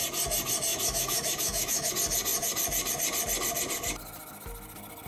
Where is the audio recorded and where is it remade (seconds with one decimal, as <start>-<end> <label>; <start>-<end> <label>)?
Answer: 0.0-0.7 recorded; 0.7-1.9 remade; 1.9-5.1 recorded